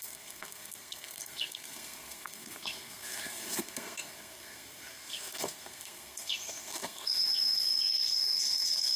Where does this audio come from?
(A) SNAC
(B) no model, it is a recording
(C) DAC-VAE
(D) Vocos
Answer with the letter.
A